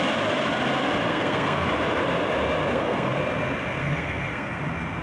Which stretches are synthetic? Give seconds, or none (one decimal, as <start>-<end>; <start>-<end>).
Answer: 1.1-1.7; 2.7-3.2; 3.8-4.6